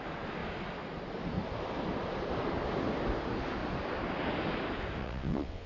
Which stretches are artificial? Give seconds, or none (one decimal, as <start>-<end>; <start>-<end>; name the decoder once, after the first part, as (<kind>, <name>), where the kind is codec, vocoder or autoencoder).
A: 5.0-5.7 (vocoder, WaveNeXt)